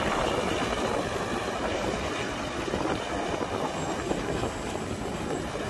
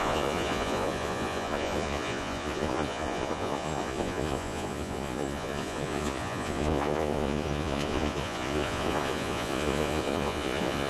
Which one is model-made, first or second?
second